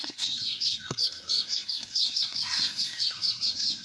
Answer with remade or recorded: remade